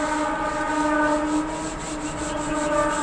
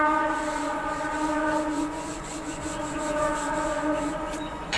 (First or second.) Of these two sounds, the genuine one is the first